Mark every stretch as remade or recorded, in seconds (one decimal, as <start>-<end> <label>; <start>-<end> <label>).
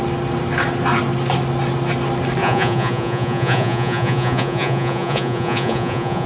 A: 0.0-2.4 recorded; 2.4-6.3 remade